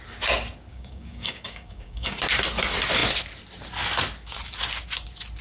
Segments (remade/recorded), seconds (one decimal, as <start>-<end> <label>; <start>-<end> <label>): 0.0-0.7 recorded; 0.7-2.2 remade; 2.2-5.4 recorded

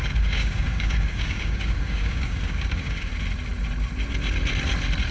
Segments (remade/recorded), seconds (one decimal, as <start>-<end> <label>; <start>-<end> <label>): 0.0-3.1 remade; 3.1-5.1 recorded

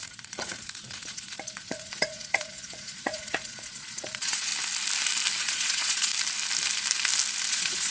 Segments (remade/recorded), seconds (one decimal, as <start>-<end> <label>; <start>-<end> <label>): 0.0-4.5 remade; 4.5-5.4 recorded; 5.4-6.1 remade; 6.1-7.5 recorded; 7.5-7.9 remade